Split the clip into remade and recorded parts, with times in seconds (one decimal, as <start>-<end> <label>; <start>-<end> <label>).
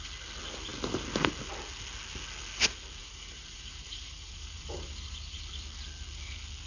0.0-3.0 recorded; 3.0-5.5 remade; 5.5-6.7 recorded